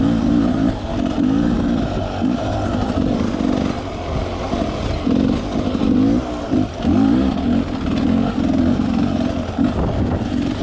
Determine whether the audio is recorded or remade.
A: recorded